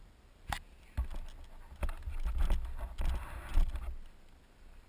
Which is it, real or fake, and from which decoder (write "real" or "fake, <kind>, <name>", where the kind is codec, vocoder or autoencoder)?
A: real